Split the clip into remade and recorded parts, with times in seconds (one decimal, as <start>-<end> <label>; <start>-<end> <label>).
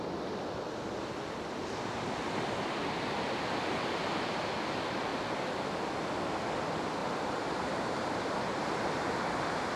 0.0-7.0 recorded; 7.0-8.0 remade; 8.0-9.8 recorded